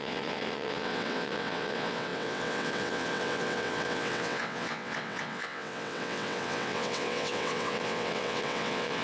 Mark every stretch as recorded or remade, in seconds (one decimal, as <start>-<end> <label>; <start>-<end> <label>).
0.0-9.0 remade